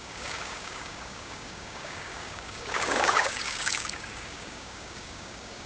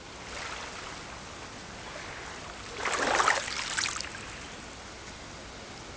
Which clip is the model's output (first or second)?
first